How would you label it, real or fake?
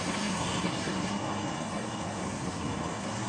fake